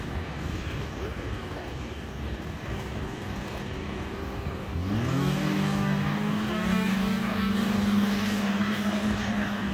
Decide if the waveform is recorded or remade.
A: remade